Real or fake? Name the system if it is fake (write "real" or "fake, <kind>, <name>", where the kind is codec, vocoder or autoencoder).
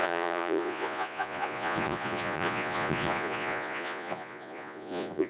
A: fake, vocoder, Vocos